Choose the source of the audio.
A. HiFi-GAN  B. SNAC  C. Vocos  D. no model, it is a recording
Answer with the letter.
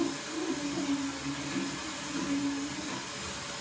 D